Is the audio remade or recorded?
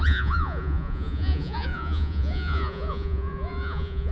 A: remade